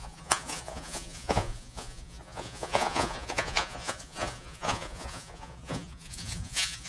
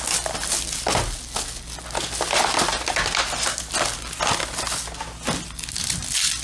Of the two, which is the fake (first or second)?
first